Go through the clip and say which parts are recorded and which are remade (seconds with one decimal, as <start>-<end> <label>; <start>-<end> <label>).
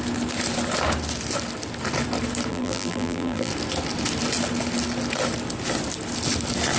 0.0-2.5 recorded; 2.5-3.5 remade; 3.5-6.8 recorded